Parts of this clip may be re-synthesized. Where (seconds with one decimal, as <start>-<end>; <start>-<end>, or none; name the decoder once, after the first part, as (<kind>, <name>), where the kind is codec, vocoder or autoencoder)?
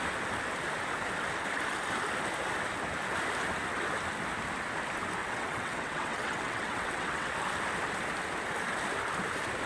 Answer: 5.2-7.3 (vocoder, WaveNeXt)